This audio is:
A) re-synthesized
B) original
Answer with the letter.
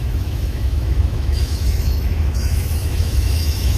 A